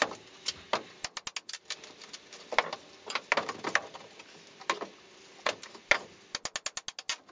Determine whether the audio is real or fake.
real